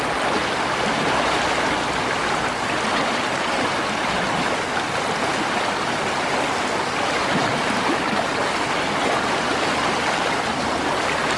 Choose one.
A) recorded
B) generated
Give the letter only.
A